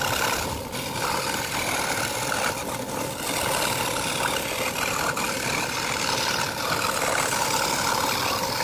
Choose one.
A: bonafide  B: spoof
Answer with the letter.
A